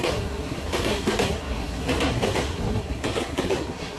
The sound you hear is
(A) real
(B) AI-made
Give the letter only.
B